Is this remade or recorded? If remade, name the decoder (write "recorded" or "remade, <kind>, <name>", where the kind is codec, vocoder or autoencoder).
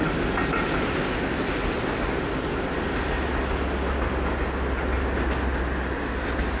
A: recorded